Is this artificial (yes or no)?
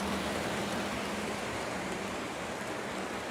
yes